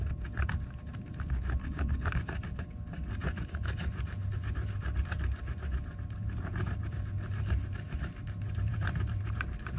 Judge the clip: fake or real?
fake